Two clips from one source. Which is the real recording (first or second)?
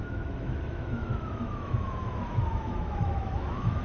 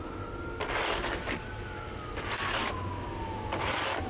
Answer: second